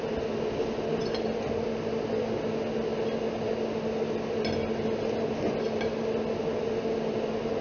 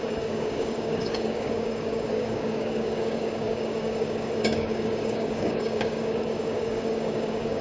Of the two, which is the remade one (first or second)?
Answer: second